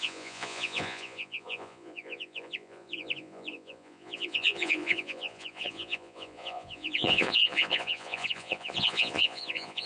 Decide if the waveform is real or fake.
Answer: fake